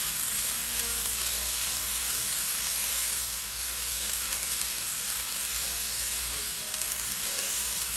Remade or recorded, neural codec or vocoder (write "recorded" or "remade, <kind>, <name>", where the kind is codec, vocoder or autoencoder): remade, codec, DAC